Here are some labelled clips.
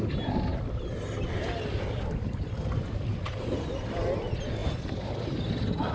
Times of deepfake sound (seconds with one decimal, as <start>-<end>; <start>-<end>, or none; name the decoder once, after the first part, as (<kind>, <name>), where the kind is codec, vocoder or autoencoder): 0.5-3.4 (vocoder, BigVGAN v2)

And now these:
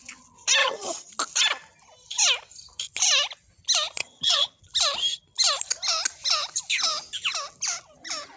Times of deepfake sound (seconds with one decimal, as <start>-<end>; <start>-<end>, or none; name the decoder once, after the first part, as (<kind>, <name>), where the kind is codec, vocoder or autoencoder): 0.6-1.1 (vocoder, HiFi-GAN); 4.0-4.6

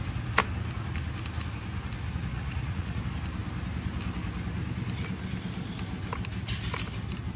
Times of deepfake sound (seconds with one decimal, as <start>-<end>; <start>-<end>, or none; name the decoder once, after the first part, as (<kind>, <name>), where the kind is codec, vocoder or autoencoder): 2.3-3.0 (vocoder, Vocos)

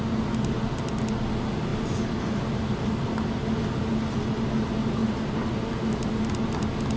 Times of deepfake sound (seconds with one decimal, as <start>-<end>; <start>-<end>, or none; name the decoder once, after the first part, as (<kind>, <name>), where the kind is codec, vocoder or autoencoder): none